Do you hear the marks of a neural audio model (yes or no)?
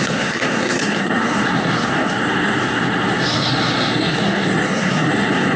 yes